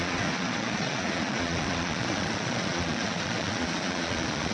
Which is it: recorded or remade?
remade